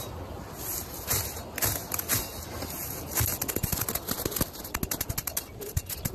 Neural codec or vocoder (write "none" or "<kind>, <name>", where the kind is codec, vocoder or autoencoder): none